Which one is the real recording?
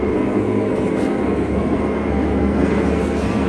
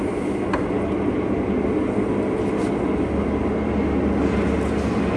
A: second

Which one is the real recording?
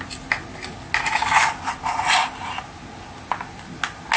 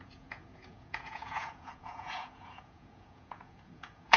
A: first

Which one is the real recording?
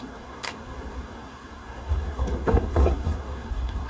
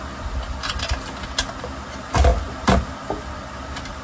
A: second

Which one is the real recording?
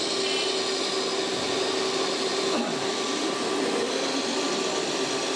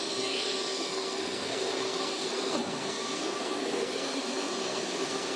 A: first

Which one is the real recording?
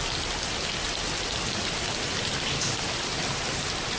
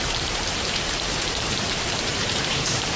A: first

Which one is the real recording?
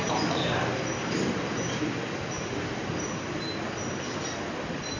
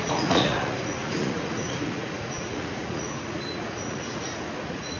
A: first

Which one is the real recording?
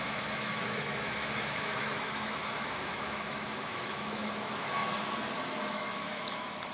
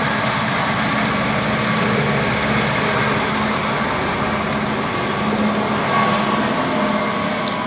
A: second